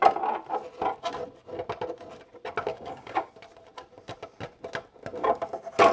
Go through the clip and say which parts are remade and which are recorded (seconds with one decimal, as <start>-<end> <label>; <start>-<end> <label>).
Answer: 0.0-2.7 recorded; 2.7-3.3 remade; 3.3-5.9 recorded